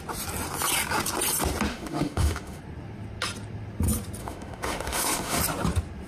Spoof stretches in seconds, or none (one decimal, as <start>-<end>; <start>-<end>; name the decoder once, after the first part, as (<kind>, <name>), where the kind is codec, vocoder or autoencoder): 1.7-2.6 (autoencoder, DAC-VAE); 4.2-5.4